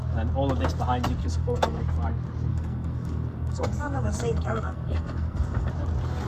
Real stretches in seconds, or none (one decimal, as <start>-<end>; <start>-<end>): 0.0-1.2; 1.8-2.5; 5.7-6.3